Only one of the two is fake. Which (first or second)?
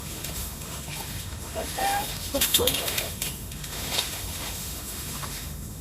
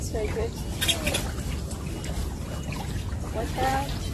first